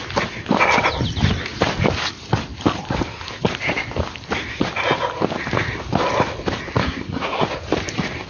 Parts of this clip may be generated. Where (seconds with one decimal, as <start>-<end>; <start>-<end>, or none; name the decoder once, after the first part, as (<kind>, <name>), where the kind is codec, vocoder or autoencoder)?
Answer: 6.8-7.4 (codec, SNAC)